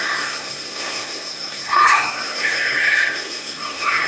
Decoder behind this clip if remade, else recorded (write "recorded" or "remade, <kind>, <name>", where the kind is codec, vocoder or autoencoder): remade, codec, SNAC